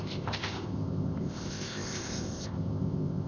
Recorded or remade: remade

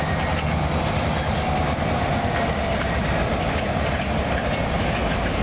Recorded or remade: recorded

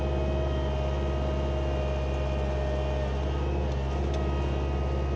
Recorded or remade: recorded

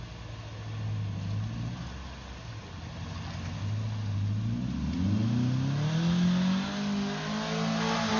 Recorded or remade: recorded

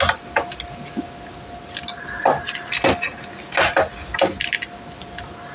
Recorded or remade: recorded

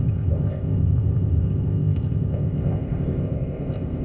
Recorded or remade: remade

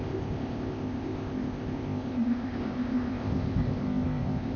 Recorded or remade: remade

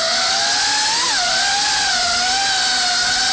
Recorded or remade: recorded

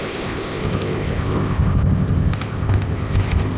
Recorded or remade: remade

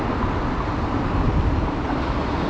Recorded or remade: recorded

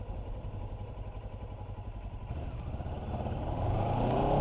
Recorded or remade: recorded